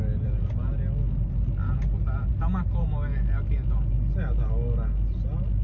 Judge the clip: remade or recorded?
recorded